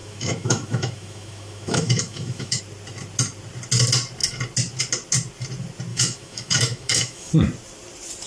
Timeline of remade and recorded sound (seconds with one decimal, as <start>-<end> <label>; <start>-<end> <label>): 0.0-2.6 remade; 2.6-5.9 recorded; 5.9-7.3 remade; 7.3-8.3 recorded